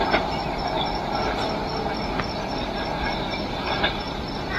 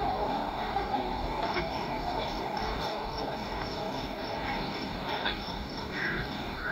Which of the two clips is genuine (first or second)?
first